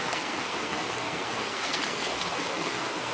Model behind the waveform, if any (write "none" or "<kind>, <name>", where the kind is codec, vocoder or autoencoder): codec, SNAC